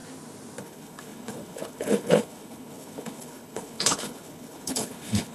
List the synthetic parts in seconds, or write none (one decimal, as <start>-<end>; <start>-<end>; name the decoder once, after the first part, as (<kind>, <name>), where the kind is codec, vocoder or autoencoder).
0.6-5.3 (codec, HILCodec)